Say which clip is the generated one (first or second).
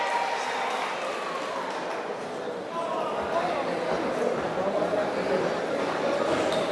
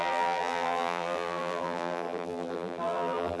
second